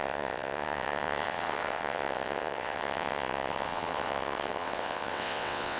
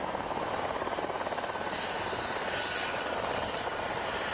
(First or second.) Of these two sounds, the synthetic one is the first